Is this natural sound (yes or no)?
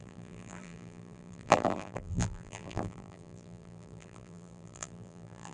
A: no